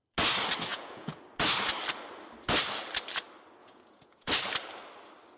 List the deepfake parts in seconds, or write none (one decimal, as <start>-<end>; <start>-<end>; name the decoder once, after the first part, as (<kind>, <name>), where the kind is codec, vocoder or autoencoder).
0.7-1.2 (vocoder, Vocos); 3.6-4.3